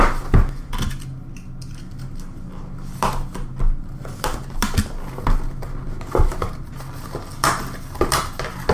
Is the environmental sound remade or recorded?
recorded